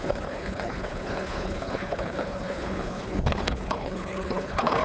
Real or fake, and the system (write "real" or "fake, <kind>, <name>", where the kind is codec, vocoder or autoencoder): fake, codec, HILCodec